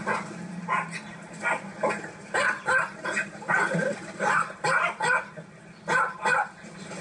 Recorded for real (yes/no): yes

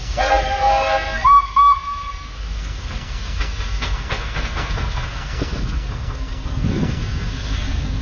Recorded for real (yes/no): no